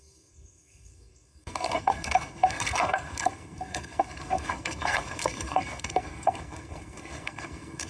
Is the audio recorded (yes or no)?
no